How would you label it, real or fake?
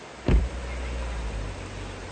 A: real